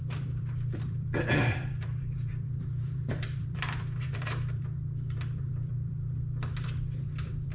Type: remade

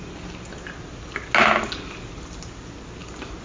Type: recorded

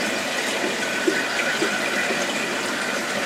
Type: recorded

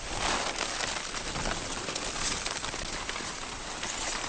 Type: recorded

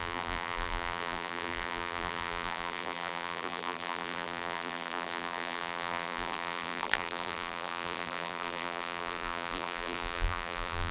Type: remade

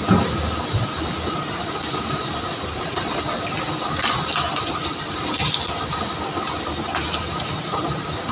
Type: recorded